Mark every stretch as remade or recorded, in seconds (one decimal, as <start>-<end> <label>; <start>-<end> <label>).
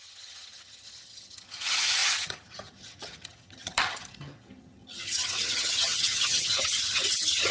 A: 0.0-7.5 remade